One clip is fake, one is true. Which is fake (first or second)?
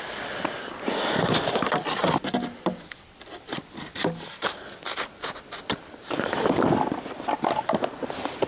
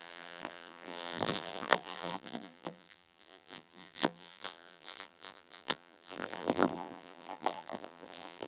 second